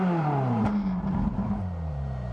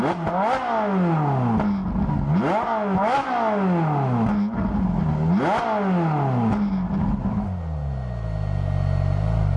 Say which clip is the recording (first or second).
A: second